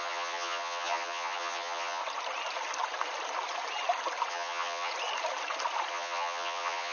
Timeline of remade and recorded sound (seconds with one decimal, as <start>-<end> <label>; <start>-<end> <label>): 0.0-2.0 remade; 2.0-4.3 recorded; 4.3-4.9 remade; 4.9-5.9 recorded; 5.9-6.9 remade